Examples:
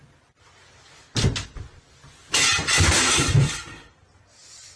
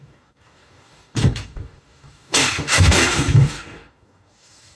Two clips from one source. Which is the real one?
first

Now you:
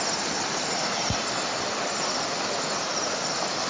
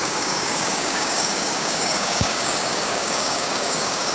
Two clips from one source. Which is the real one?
first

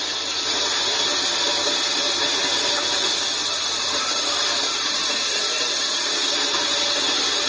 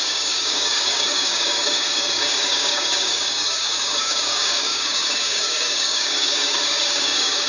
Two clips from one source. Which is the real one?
first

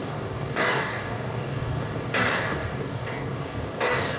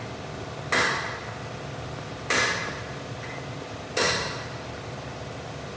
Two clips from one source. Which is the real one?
second